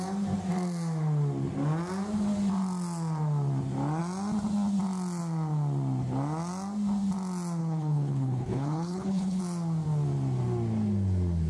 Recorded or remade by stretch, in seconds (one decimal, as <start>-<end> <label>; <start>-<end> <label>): 0.0-7.6 recorded; 7.6-9.4 remade; 9.4-11.5 recorded

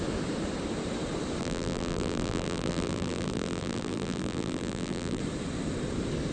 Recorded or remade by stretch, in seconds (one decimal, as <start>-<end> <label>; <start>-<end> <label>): 0.0-1.4 recorded; 1.4-5.2 remade; 5.2-6.3 recorded

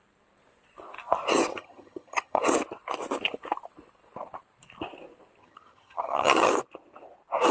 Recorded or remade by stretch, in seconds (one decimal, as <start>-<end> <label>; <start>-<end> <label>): 0.0-1.5 recorded; 1.5-2.4 remade; 2.4-5.4 recorded; 5.4-6.5 remade; 6.5-7.5 recorded